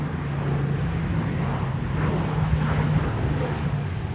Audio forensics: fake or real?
real